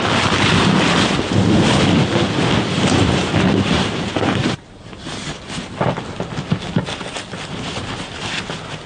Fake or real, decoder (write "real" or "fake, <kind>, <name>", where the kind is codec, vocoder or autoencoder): real